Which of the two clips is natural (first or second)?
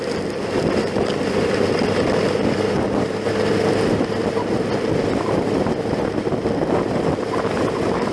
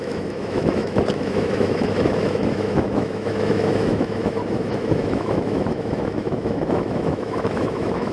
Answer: first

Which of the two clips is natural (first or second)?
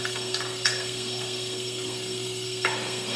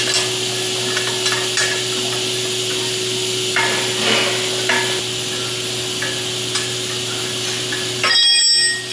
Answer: second